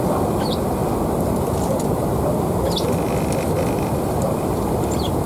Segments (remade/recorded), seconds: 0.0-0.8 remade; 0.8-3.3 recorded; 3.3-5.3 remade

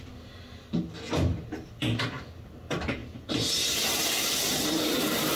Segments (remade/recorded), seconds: 0.0-5.4 recorded

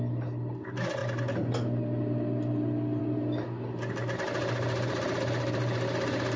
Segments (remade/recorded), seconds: 0.0-6.4 recorded

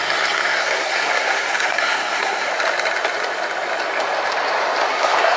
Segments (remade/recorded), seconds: 0.0-2.5 remade; 2.5-4.9 recorded; 4.9-5.4 remade

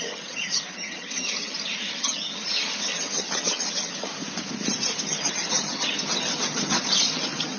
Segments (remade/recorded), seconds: 0.0-4.1 remade; 4.1-5.0 recorded; 5.0-7.6 remade